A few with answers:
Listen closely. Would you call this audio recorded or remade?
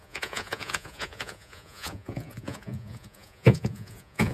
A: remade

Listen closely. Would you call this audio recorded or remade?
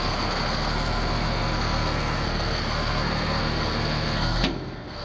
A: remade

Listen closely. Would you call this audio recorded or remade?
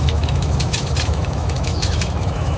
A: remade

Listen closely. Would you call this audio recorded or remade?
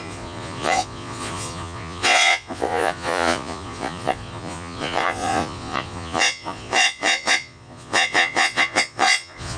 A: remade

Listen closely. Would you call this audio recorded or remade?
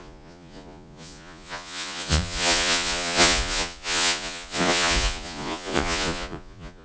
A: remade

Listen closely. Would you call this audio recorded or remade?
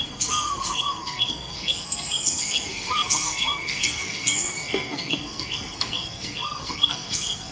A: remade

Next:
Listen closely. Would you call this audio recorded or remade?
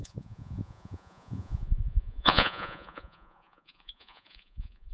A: remade